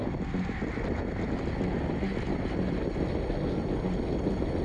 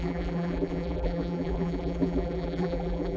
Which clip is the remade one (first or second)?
second